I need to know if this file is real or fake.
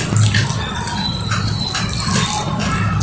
real